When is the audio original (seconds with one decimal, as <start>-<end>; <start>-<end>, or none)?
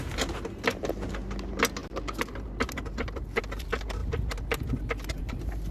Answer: 0.0-5.7